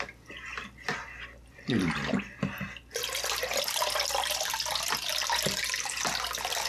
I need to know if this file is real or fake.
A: real